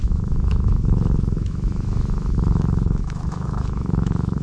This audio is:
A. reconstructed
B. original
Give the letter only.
A